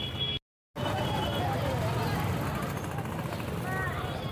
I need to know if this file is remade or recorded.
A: recorded